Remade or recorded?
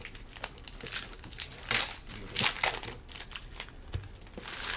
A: recorded